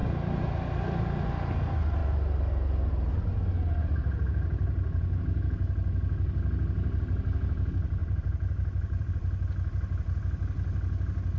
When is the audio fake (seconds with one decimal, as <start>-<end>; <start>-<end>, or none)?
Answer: 0.0-1.0; 4.0-5.2; 8.0-9.1

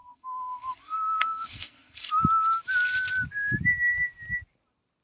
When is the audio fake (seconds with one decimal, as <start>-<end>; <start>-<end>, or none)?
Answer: 0.0-2.1

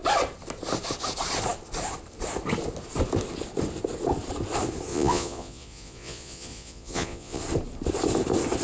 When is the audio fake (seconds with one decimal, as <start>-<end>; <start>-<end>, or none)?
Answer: 4.9-7.4

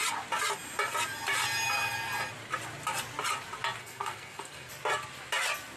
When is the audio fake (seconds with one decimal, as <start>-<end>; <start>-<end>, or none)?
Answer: 3.8-4.7

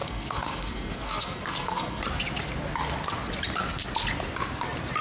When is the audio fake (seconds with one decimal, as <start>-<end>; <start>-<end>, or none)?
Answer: 0.0-2.0

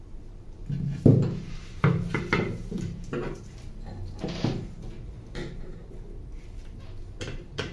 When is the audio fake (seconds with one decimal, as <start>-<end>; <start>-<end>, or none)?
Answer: 0.0-0.6; 1.4-7.7